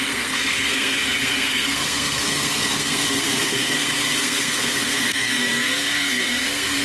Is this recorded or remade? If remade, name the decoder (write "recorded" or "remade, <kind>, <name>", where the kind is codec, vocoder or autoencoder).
remade, codec, SNAC